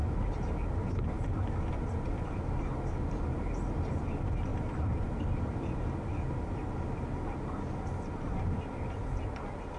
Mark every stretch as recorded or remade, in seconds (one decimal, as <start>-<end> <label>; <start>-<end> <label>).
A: 0.0-9.8 recorded